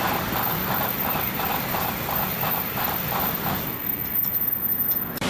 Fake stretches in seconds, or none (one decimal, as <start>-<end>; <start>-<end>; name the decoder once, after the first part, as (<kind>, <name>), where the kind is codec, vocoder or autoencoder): none